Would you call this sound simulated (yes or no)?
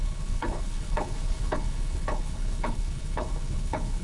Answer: yes